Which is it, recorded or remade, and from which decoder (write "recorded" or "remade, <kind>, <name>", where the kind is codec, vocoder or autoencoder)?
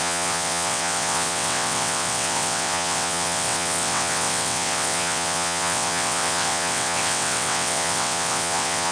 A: remade, vocoder, WaveNeXt